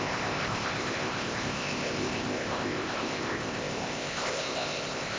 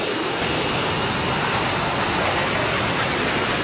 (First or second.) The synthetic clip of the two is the first